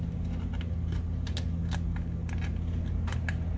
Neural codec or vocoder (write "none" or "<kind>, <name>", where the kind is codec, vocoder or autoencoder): none